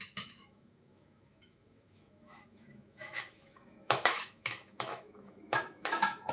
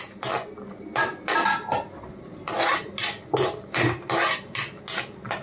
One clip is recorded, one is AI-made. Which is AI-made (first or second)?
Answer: first